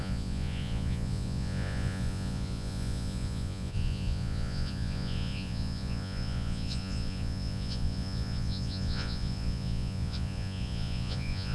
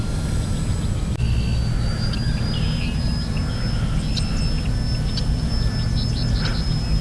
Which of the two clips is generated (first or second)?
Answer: first